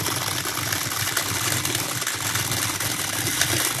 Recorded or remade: recorded